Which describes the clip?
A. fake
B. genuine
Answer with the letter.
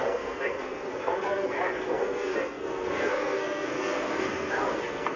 A